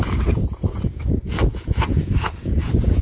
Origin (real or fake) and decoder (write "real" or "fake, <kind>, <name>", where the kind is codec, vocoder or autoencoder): fake, vocoder, Vocos